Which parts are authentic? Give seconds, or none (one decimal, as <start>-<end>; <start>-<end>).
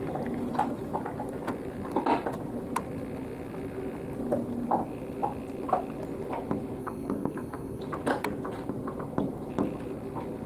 0.0-6.8; 7.8-10.5